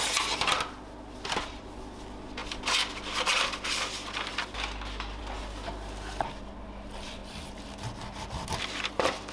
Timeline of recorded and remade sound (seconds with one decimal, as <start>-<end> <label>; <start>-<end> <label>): 0.0-9.3 recorded